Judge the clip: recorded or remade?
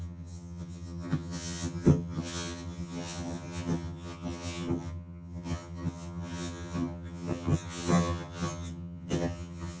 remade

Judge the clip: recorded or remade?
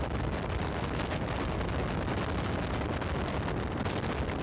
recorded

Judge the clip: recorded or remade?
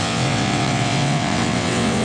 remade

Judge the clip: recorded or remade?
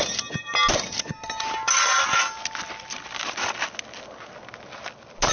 recorded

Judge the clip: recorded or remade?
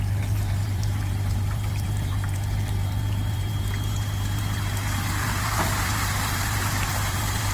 remade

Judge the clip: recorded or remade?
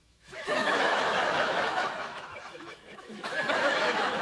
remade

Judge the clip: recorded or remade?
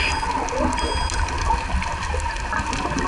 recorded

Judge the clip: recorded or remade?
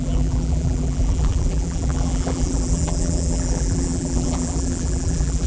remade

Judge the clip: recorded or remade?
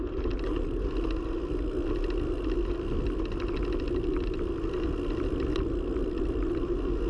recorded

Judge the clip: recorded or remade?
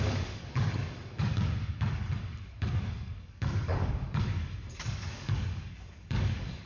remade